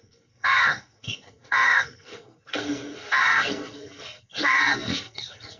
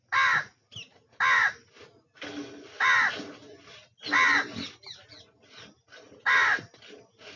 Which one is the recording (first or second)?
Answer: second